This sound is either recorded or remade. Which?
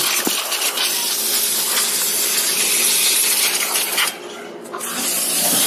recorded